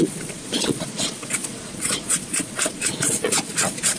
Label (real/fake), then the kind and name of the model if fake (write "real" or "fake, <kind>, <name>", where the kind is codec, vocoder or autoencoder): fake, vocoder, Vocos